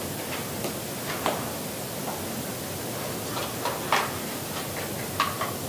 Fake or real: real